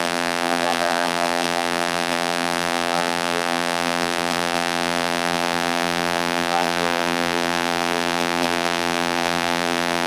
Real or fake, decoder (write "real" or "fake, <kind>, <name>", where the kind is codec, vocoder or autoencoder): fake, vocoder, BigVGAN v2